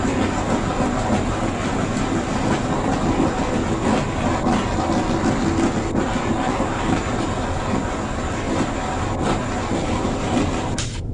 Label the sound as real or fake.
real